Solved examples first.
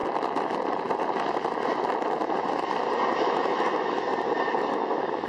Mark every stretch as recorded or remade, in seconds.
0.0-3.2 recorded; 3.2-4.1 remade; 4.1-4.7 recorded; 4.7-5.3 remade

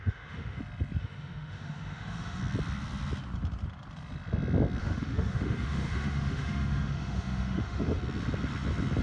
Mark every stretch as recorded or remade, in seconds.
0.0-0.6 remade; 0.6-1.0 recorded; 1.0-2.4 remade; 2.4-4.8 recorded; 4.8-8.0 remade; 8.0-9.0 recorded

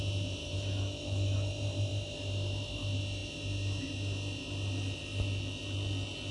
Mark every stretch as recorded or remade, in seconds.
0.0-0.4 recorded; 0.4-1.5 remade; 1.5-6.3 recorded

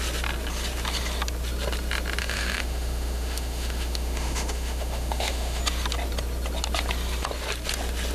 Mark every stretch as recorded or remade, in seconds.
0.0-2.2 recorded; 2.2-5.6 remade; 5.6-8.1 recorded

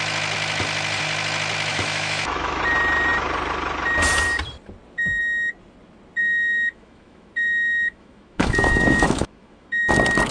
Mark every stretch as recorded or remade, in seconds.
0.0-1.7 recorded; 1.7-2.6 remade; 2.6-6.2 recorded; 6.2-9.8 remade; 9.8-10.3 recorded

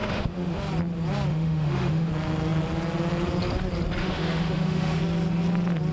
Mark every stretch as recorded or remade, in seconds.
0.0-0.6 remade; 0.6-1.3 recorded; 1.3-2.1 remade; 2.1-4.0 recorded; 4.0-5.0 remade; 5.0-5.9 recorded

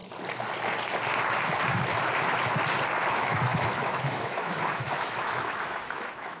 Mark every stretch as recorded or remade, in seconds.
0.0-3.1 recorded; 3.1-6.4 remade